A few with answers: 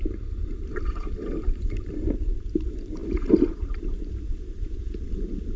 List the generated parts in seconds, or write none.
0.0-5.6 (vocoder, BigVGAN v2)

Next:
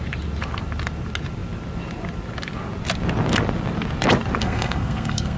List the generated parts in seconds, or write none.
4.4-5.4 (codec, SNAC)